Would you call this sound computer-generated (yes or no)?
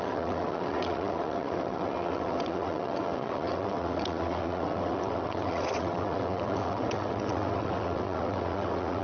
yes